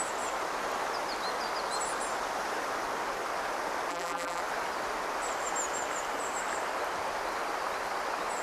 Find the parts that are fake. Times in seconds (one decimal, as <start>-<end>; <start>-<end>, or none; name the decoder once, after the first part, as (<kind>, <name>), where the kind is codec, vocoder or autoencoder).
3.9-4.4 (vocoder, BigVGAN v2)